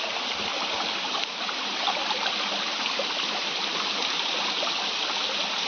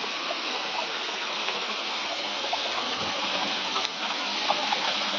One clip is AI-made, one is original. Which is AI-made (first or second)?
second